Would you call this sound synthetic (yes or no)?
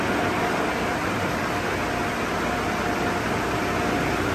no